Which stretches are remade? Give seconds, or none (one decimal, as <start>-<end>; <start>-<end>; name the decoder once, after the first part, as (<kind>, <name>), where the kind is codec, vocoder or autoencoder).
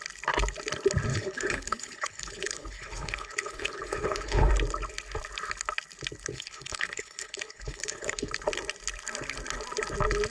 1.1-4.5 (codec, HILCodec); 6.3-8.3